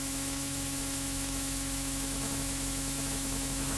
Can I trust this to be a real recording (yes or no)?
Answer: no